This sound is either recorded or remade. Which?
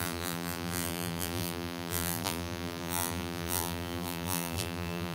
remade